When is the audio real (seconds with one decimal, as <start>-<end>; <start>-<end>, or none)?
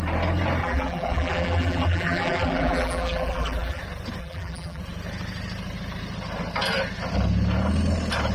0.0-0.6; 3.8-4.2; 4.8-8.3